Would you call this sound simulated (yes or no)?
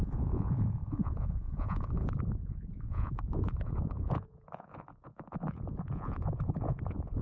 yes